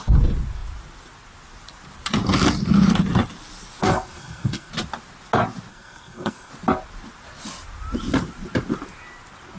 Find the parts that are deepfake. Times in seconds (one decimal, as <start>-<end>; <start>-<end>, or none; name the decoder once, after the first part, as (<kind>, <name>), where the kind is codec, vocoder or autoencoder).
3.8-4.7 (codec, SNAC); 5.7-6.5